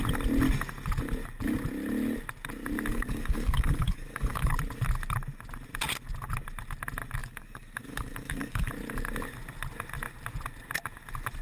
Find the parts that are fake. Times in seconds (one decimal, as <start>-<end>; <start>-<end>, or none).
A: 2.9-4.5; 7.2-8.7